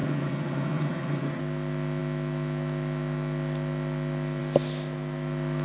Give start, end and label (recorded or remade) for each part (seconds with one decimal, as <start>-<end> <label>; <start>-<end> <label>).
0.0-1.4 remade; 1.4-5.6 recorded